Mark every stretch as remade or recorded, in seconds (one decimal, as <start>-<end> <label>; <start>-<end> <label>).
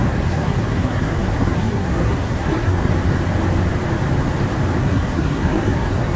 0.0-2.9 remade; 2.9-4.8 recorded; 4.8-6.2 remade